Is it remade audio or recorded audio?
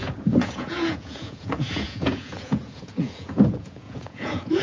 remade